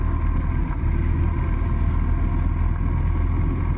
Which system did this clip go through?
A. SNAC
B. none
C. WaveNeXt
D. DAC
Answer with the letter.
B